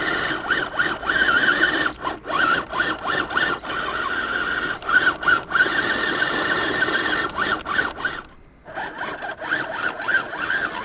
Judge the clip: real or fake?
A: real